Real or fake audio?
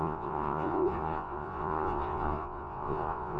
fake